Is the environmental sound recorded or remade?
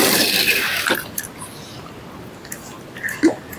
recorded